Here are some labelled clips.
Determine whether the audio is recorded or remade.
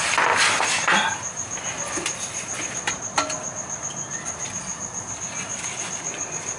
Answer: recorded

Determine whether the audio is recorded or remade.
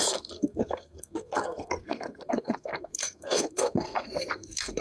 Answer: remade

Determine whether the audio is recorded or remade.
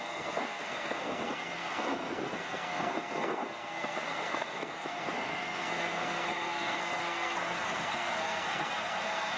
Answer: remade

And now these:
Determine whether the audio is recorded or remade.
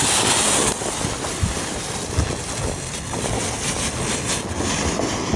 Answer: recorded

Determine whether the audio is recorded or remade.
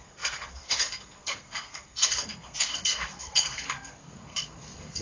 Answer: remade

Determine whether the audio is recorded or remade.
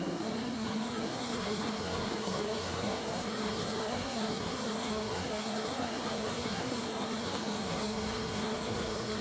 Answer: remade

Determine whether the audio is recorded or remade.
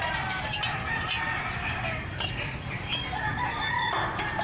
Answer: recorded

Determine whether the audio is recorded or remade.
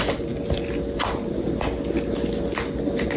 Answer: recorded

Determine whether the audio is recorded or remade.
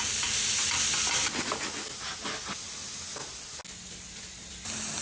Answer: recorded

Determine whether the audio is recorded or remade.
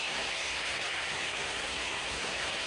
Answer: remade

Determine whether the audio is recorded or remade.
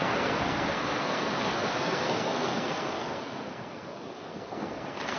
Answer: remade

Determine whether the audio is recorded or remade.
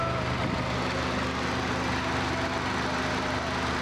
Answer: recorded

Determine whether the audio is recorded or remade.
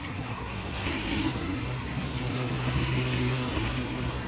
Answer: remade